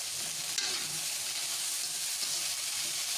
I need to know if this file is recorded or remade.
remade